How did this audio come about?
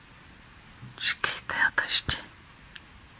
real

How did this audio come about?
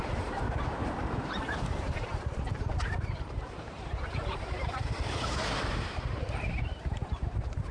fake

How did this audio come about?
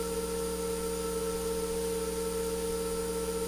real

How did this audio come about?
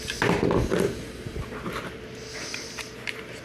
real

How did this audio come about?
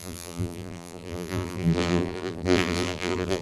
fake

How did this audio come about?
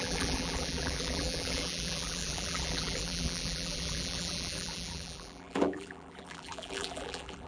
fake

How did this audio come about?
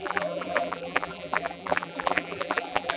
fake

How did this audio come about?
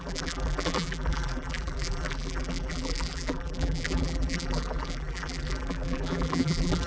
fake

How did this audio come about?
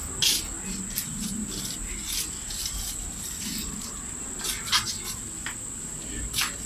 real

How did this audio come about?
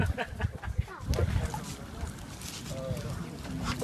real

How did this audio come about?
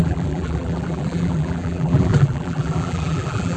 fake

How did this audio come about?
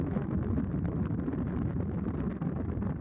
real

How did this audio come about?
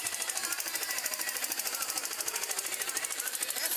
fake